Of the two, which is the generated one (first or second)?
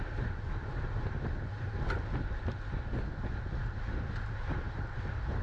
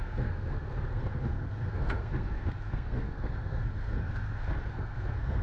second